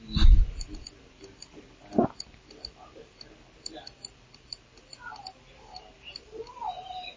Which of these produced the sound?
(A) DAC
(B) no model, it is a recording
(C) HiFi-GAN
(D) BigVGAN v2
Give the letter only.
B